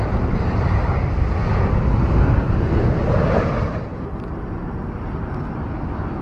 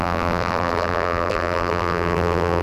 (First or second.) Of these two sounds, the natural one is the first